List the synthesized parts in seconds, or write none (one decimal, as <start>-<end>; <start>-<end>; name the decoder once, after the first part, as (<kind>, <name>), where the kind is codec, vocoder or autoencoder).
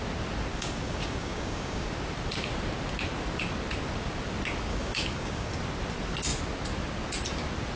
0.5-1.9 (codec, DAC); 4.7-5.6